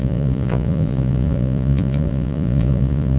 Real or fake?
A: fake